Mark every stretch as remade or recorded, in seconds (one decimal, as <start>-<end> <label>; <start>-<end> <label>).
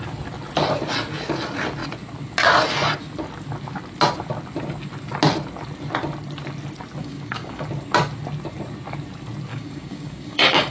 0.0-7.0 recorded; 7.0-7.6 remade; 7.6-9.5 recorded; 9.5-10.7 remade